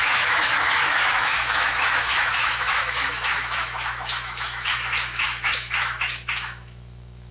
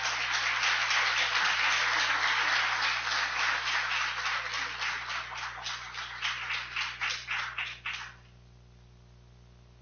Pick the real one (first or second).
second